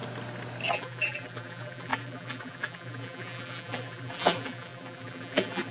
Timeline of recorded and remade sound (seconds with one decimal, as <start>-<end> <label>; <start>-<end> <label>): 0.0-0.7 recorded; 0.7-5.7 remade